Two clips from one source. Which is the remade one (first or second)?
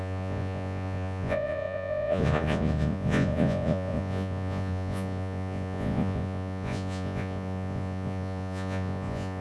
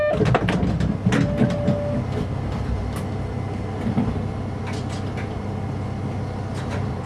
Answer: first